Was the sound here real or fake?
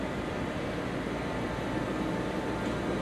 real